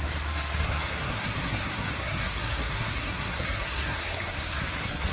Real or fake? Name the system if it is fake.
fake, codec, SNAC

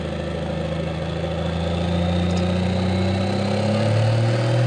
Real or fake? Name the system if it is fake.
real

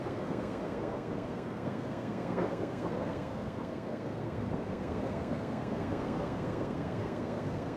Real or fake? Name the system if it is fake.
fake, codec, SNAC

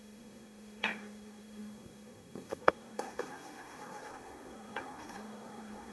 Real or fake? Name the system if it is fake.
fake, codec, SNAC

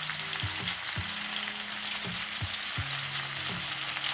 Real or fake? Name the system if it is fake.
real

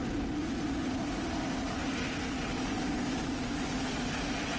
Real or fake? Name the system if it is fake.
real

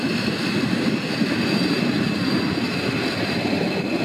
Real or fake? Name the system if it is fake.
real